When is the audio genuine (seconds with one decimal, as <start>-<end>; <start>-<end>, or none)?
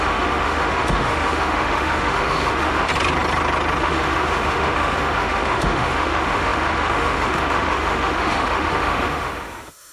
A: 2.9-3.8